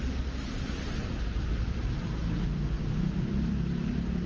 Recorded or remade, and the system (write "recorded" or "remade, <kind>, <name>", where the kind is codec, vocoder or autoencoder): recorded